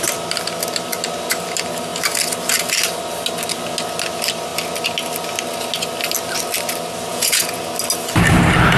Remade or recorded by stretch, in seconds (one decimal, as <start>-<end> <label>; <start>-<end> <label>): 0.0-7.1 recorded; 7.1-7.6 remade; 7.6-8.8 recorded